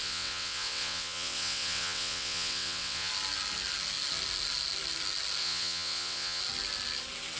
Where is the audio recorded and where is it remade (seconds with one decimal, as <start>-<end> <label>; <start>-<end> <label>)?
0.0-3.1 remade; 3.1-5.4 recorded; 5.4-6.4 remade; 6.4-7.4 recorded